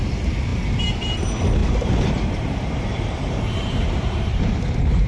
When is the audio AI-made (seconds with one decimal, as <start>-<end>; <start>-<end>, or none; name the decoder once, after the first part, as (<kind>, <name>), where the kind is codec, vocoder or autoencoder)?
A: 1.6-5.1 (vocoder, BigVGAN v2)